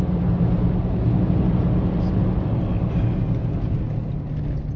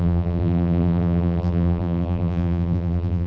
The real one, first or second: first